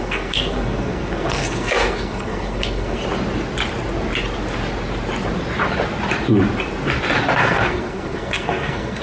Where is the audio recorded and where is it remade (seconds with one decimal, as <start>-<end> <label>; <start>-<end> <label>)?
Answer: 0.0-3.0 remade; 3.0-7.4 recorded; 7.4-9.0 remade